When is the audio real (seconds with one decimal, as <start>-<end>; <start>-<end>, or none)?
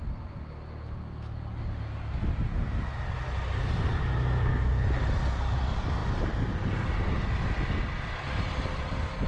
0.0-9.3